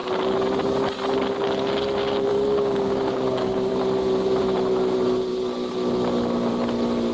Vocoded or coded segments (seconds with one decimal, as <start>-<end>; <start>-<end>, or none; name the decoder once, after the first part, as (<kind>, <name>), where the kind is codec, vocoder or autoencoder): 2.3-3.7 (codec, DAC)